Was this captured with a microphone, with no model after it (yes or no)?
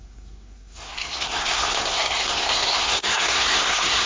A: no